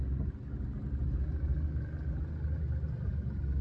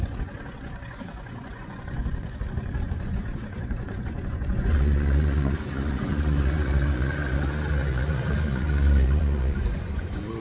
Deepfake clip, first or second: second